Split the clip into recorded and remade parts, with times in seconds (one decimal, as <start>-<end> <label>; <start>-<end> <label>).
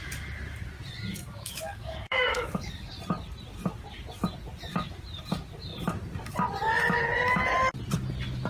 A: 0.0-1.1 recorded; 1.1-2.9 remade; 2.9-8.5 recorded